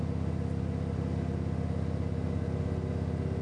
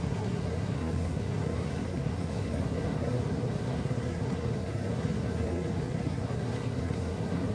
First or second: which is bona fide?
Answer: first